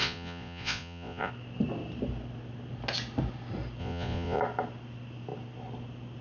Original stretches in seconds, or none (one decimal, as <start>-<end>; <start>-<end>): 1.3-3.8; 4.4-6.2